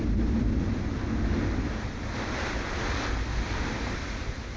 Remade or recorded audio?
recorded